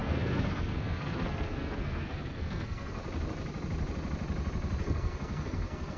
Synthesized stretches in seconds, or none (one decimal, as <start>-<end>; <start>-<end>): 0.0-3.0; 4.8-6.0